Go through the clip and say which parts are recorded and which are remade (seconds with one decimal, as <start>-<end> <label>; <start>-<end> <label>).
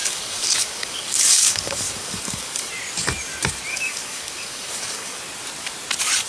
0.0-2.7 remade; 2.7-3.7 recorded; 3.7-5.2 remade; 5.2-6.3 recorded